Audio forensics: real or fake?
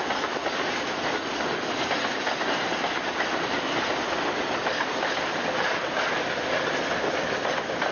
real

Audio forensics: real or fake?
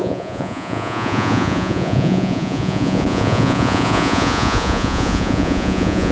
fake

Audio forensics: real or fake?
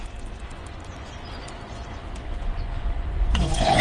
fake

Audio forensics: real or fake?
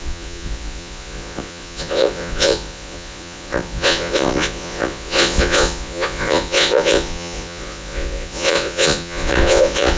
fake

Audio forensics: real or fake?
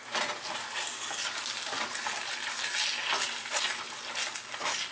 real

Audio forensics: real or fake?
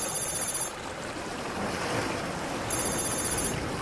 real